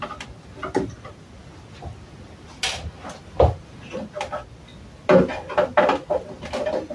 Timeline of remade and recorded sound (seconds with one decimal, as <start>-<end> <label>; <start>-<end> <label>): 0.0-6.9 recorded

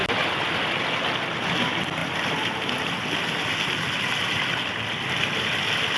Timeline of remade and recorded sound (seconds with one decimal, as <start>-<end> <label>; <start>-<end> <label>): 0.0-2.0 recorded; 2.0-2.6 remade; 2.6-6.0 recorded

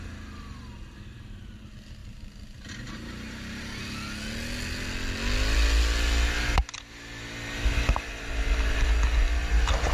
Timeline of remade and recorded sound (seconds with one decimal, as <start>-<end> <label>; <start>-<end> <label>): 0.0-2.0 recorded; 2.0-3.8 remade; 3.8-9.9 recorded

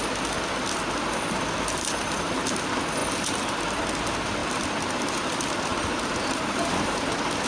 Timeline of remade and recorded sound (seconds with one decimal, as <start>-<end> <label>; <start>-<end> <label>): 0.0-5.7 recorded; 5.7-7.1 remade; 7.1-7.5 recorded

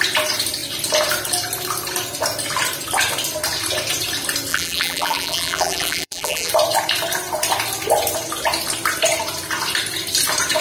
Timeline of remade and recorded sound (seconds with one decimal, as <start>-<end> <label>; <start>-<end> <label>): 0.0-4.5 recorded; 4.5-6.5 remade; 6.5-10.6 recorded

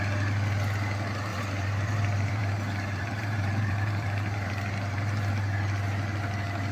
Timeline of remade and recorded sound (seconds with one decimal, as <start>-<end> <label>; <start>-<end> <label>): 0.0-1.3 recorded; 1.3-5.3 remade; 5.3-6.7 recorded